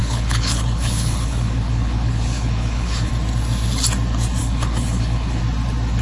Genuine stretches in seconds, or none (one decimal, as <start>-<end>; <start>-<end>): 3.1-4.4; 5.4-6.0